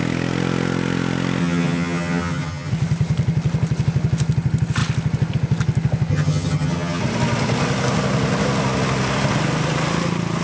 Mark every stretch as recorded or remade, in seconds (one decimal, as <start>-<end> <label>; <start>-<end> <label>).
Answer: 0.0-1.4 recorded; 1.4-2.7 remade; 2.7-6.1 recorded; 6.1-7.0 remade; 7.0-10.4 recorded